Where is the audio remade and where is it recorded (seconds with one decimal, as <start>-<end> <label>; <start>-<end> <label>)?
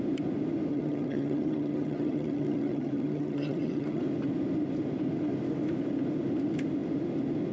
0.0-0.7 recorded; 0.7-4.0 remade; 4.0-7.5 recorded